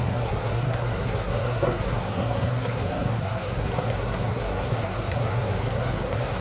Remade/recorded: remade